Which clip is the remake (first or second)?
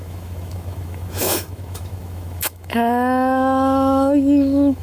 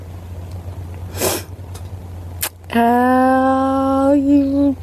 first